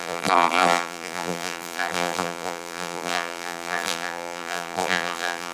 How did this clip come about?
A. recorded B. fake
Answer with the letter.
B